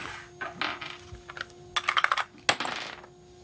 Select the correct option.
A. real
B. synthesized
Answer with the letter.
A